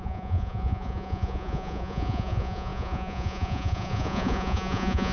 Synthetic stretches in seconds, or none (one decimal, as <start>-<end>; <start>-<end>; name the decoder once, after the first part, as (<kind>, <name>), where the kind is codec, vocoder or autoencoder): 0.0-5.1 (vocoder, Vocos)